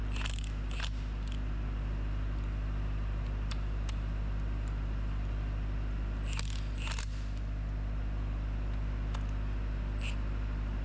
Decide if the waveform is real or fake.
real